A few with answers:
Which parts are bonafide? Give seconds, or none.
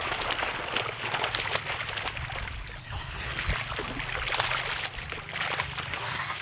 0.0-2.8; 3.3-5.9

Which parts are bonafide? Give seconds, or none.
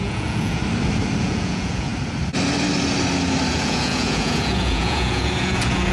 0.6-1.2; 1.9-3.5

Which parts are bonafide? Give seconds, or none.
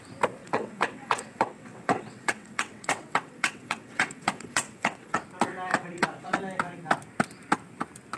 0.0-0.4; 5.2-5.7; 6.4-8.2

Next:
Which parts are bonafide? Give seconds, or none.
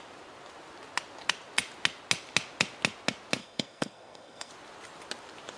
0.0-3.4; 4.5-5.6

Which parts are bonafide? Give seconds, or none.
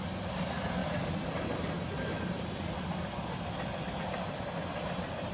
0.0-5.3